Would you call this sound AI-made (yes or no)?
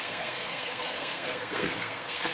yes